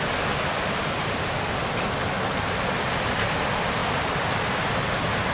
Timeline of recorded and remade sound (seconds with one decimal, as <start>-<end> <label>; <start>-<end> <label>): 0.0-5.3 recorded